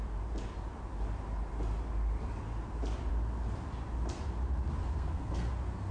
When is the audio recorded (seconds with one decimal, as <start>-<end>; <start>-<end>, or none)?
0.0-4.8; 5.5-5.9